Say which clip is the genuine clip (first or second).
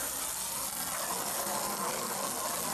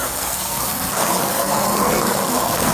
first